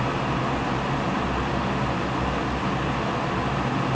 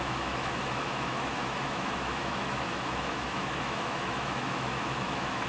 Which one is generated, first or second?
second